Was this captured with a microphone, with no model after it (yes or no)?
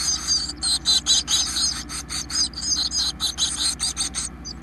yes